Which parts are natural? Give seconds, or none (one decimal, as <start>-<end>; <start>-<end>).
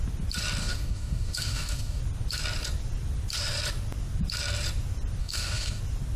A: 0.0-0.6; 2.0-5.2; 5.8-6.2